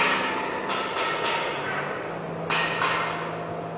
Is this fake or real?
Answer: real